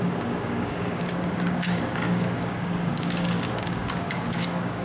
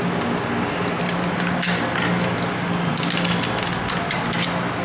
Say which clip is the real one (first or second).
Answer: second